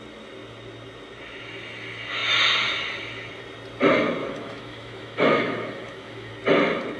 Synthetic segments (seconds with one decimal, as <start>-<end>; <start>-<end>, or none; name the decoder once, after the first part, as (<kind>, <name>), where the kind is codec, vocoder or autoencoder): 4.2-6.3 (autoencoder, DAC-VAE)